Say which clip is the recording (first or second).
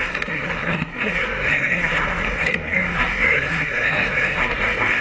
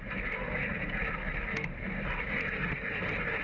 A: second